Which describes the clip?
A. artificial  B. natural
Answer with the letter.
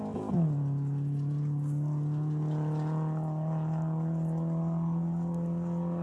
B